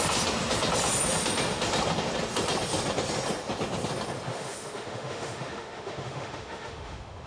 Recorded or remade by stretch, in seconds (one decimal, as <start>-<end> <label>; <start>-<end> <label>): 0.0-4.3 recorded; 4.3-7.3 remade